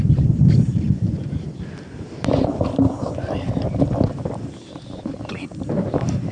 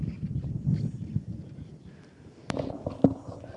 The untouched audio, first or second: second